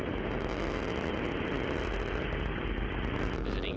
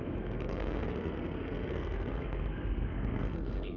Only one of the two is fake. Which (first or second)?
second